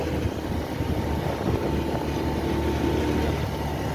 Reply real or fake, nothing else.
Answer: real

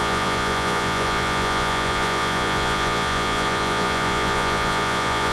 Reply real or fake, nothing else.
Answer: fake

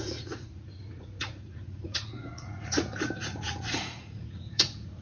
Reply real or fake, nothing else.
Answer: fake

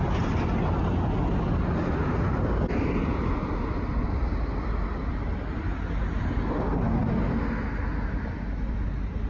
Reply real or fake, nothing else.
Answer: real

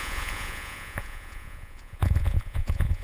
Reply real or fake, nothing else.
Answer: fake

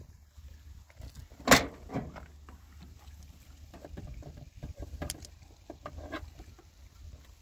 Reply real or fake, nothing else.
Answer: real